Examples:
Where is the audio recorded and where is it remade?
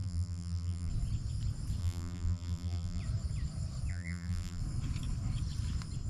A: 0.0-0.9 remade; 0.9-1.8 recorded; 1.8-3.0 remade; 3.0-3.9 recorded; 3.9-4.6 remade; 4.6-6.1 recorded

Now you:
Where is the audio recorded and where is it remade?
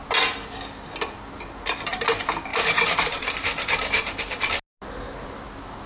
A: 0.0-2.5 recorded; 2.5-4.2 remade; 4.2-5.9 recorded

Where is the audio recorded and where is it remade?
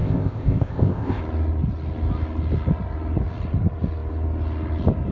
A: 0.0-1.2 remade; 1.2-5.1 recorded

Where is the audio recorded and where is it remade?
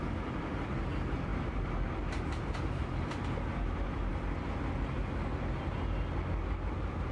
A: 0.0-4.1 remade; 4.1-7.1 recorded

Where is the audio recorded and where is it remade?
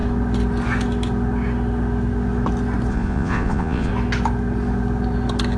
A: 0.0-2.9 recorded; 2.9-3.9 remade; 3.9-5.6 recorded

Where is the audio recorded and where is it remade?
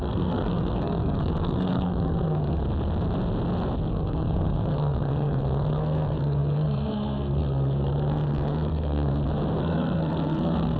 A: 0.0-2.6 remade; 2.6-3.9 recorded; 3.9-9.1 remade; 9.1-9.6 recorded; 9.6-10.8 remade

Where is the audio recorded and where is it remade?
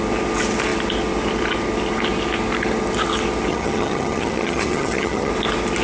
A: 0.0-3.5 recorded; 3.5-5.3 remade; 5.3-5.8 recorded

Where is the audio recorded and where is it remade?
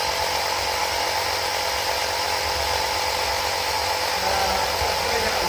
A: 0.0-5.5 remade